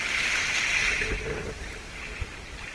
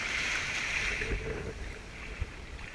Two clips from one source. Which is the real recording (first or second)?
first